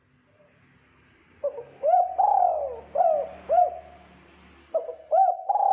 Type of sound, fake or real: real